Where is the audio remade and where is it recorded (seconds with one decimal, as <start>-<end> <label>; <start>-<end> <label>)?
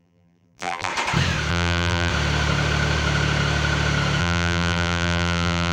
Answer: 0.0-0.9 remade; 0.9-1.5 recorded; 1.5-2.1 remade; 2.1-4.2 recorded; 4.2-5.7 remade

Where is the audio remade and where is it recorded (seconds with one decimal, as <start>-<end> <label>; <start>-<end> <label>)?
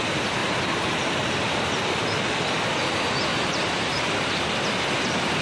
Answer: 0.0-3.3 recorded; 3.3-4.4 remade; 4.4-5.4 recorded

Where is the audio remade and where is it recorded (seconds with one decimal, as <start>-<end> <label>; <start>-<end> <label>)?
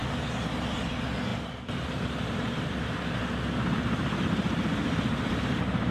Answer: 0.0-1.3 recorded; 1.3-3.2 remade; 3.2-5.9 recorded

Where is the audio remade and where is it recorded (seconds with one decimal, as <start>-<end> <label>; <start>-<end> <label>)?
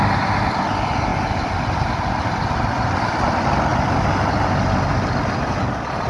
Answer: 0.0-6.1 recorded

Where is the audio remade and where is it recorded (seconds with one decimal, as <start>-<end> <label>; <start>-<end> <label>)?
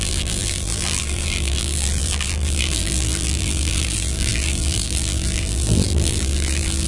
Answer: 0.0-6.9 remade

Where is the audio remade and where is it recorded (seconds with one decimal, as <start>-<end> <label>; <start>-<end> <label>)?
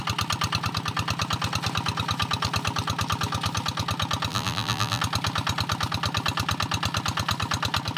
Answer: 0.0-4.3 recorded; 4.3-5.0 remade; 5.0-8.0 recorded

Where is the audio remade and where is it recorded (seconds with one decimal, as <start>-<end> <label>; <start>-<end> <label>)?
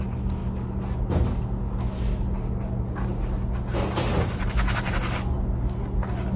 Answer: 0.0-4.1 recorded; 4.1-5.0 remade; 5.0-6.4 recorded